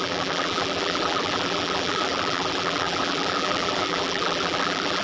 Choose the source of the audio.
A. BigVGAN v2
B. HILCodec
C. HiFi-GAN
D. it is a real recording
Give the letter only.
A